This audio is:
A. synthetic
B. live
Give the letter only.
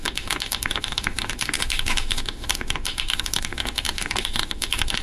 A